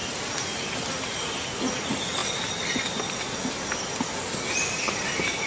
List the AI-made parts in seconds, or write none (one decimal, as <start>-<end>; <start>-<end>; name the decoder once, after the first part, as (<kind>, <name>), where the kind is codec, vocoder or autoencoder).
none